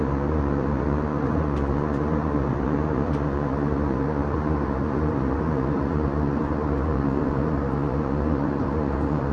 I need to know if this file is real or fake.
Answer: fake